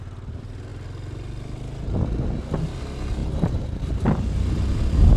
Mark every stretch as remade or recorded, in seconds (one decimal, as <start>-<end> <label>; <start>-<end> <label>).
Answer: 0.0-3.2 recorded; 3.2-4.0 remade; 4.0-5.2 recorded